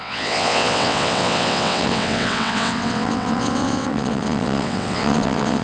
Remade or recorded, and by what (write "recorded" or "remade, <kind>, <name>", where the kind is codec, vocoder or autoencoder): remade, vocoder, WaveNeXt